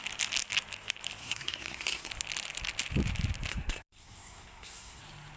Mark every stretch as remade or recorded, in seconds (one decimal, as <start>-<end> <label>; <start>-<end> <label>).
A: 0.0-1.2 recorded; 1.2-2.1 remade; 2.1-3.5 recorded; 3.5-5.0 remade; 5.0-5.4 recorded

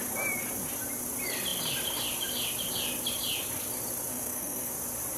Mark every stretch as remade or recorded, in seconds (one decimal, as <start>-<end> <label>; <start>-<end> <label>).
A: 0.0-4.1 recorded; 4.1-4.7 remade; 4.7-5.2 recorded

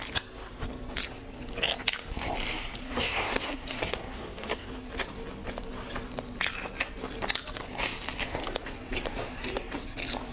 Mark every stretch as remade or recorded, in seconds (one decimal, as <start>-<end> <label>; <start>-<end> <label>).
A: 0.0-2.8 recorded; 2.8-4.7 remade; 4.7-10.3 recorded

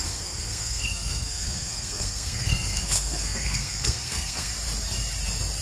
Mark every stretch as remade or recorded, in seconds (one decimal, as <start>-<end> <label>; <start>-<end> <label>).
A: 0.0-4.5 remade; 4.5-5.6 recorded

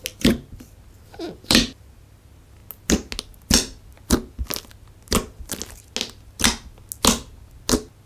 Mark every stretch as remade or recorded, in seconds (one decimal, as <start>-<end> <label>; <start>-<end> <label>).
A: 0.0-8.1 recorded

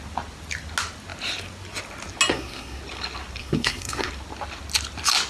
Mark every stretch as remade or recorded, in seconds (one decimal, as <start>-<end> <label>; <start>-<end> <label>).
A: 0.0-2.3 recorded; 2.3-2.8 remade; 2.8-3.4 recorded; 3.4-4.1 remade; 4.1-5.3 recorded

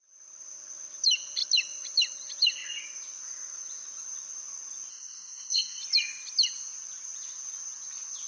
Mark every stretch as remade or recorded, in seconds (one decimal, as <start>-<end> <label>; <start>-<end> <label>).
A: 0.0-4.9 recorded; 4.9-5.8 remade; 5.8-8.3 recorded